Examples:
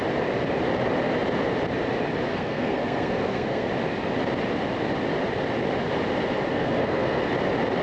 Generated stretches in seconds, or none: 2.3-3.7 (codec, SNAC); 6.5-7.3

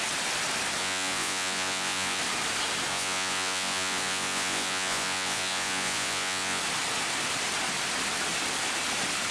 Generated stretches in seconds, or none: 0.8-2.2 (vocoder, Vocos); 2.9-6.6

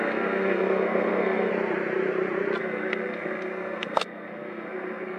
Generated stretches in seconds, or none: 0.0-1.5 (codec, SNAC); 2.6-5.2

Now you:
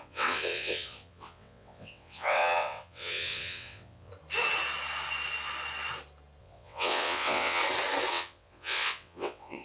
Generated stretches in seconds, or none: 0.0-4.1 (vocoder, WaveNeXt); 6.4-7.6; 8.1-9.6

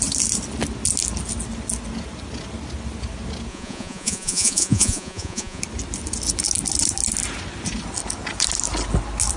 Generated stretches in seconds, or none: 3.5-5.6 (vocoder, Vocos)

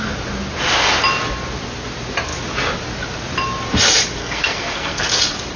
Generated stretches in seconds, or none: 4.2-5.0 (codec, SNAC)